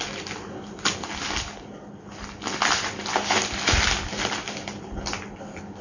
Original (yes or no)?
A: yes